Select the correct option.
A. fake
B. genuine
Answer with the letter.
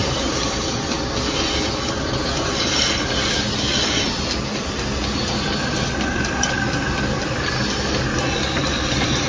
B